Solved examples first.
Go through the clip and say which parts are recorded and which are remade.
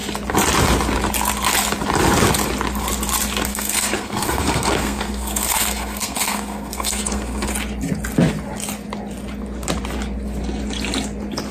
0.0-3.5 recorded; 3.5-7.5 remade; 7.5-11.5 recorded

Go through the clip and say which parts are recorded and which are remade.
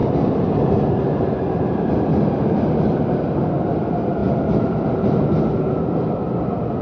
0.0-6.8 recorded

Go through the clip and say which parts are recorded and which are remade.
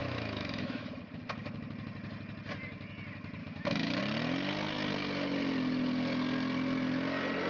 0.0-0.9 remade; 0.9-3.4 recorded; 3.4-4.0 remade; 4.0-7.5 recorded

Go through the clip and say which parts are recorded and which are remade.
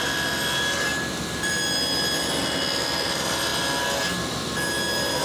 0.0-5.2 recorded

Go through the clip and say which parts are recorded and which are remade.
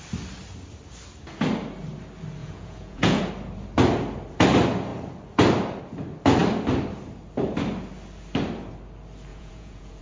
0.0-2.4 recorded; 2.4-3.3 remade; 3.3-9.3 recorded; 9.3-10.0 remade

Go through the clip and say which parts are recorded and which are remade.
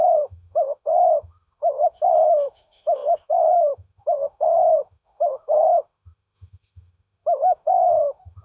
0.0-8.4 remade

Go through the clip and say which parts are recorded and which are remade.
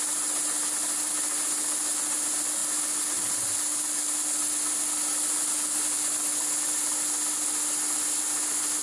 0.0-8.8 recorded